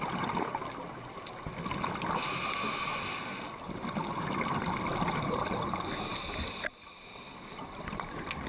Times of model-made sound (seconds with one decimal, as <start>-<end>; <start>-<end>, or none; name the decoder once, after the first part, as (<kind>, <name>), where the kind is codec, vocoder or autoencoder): none